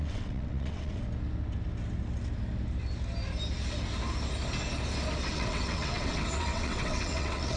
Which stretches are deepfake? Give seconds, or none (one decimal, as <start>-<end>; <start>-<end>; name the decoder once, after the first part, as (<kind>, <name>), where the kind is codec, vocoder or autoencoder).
0.0-1.0 (vocoder, WaveNeXt); 5.3-7.6